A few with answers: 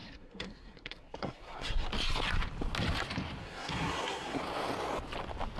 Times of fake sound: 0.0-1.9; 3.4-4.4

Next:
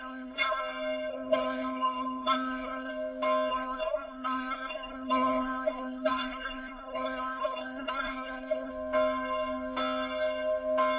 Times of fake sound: 0.0-0.6; 1.1-2.9; 3.5-8.7